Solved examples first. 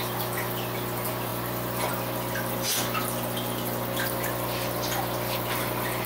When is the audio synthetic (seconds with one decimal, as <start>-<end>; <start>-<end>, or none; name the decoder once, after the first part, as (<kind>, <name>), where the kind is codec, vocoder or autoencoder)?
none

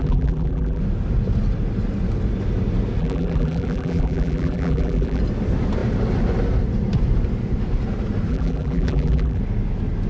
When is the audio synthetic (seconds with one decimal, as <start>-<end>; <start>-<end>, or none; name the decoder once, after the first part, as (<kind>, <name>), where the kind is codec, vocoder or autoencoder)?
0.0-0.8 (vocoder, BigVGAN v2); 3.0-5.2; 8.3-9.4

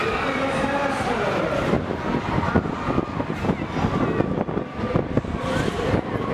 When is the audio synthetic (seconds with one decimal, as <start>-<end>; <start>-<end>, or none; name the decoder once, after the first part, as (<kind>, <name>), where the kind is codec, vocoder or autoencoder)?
none

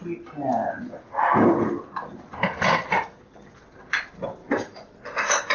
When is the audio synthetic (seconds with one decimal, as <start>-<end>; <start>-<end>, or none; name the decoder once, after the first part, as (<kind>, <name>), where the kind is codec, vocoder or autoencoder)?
0.6-3.9 (vocoder, BigVGAN v2); 4.4-4.9